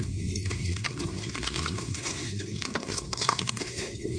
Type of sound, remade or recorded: remade